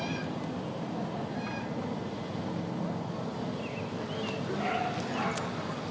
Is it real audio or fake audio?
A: real